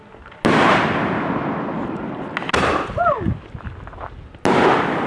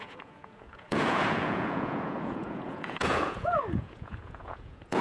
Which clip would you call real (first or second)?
first